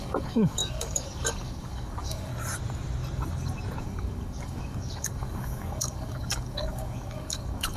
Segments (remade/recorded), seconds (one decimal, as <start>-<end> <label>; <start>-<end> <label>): 0.0-2.3 remade; 2.3-3.8 recorded; 3.8-7.8 remade